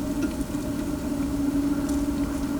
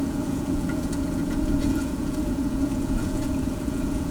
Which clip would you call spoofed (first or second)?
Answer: second